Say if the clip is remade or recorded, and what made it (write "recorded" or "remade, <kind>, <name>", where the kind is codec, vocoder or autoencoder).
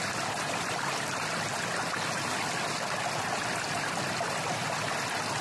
recorded